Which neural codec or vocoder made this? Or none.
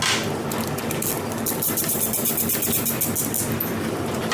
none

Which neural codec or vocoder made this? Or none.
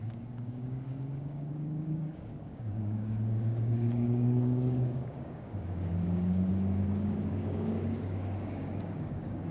codec, DAC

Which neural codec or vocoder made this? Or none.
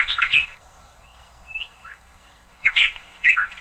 codec, SNAC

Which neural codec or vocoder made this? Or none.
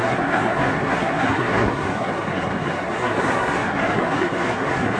codec, SNAC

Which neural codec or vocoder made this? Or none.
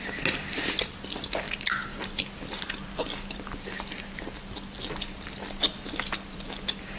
none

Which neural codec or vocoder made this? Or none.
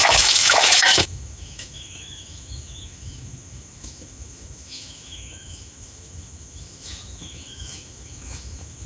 autoencoder, DAC-VAE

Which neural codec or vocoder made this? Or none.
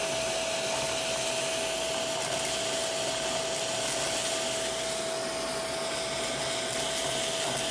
none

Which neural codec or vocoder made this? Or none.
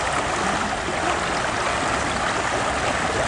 none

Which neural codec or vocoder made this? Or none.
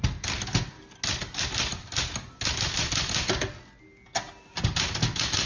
none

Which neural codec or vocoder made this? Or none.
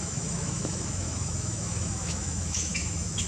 autoencoder, DAC-VAE